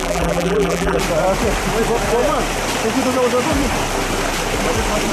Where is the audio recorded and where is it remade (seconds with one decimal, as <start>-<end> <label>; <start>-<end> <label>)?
0.0-1.0 remade; 1.0-5.1 recorded